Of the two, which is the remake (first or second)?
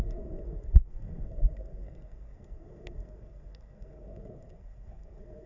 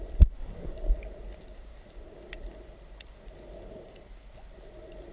first